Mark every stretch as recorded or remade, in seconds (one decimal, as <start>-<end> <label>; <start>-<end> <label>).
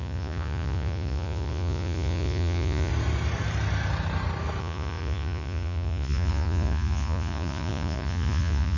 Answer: 0.0-2.9 remade; 2.9-4.6 recorded; 4.6-8.8 remade